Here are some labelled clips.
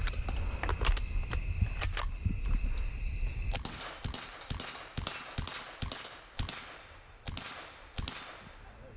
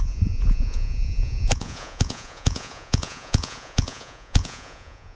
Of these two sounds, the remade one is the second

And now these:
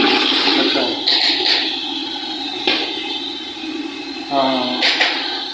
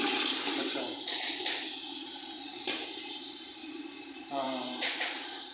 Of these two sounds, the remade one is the second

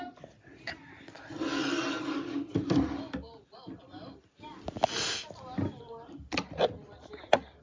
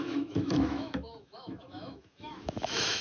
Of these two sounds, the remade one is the second